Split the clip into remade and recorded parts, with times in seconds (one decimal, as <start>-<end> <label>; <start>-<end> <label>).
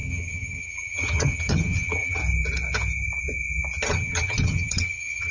0.0-2.2 remade; 2.2-3.9 recorded; 3.9-5.3 remade